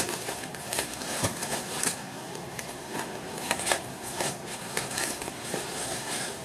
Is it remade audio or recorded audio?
remade